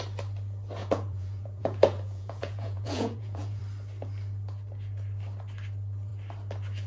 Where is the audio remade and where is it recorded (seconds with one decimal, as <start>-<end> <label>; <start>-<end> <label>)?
0.0-0.8 recorded; 0.8-3.6 remade; 3.6-6.9 recorded